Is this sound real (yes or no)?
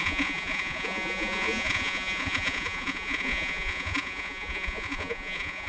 no